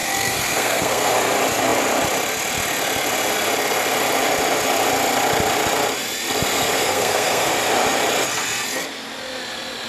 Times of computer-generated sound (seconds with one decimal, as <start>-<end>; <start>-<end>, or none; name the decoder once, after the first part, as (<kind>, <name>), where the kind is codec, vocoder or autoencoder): 0.0-1.1 (codec, SNAC); 6.8-7.5